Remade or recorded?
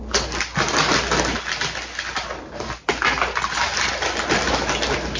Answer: recorded